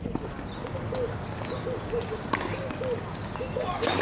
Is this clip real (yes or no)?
yes